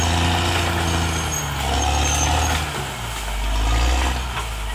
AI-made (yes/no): no